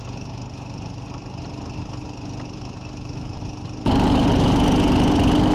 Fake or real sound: real